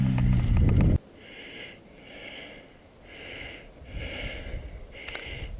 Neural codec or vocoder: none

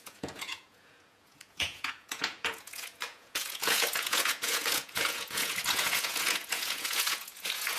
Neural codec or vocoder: vocoder, Vocos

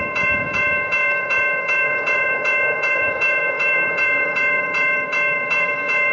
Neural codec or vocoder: vocoder, Vocos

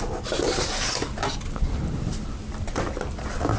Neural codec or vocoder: none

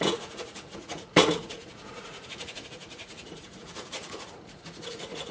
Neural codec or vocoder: vocoder, Vocos